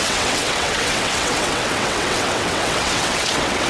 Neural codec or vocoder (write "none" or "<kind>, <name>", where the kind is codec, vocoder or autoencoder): vocoder, WaveNeXt